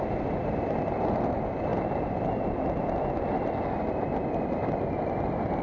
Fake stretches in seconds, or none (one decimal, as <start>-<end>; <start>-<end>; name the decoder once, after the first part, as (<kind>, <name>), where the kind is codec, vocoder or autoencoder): none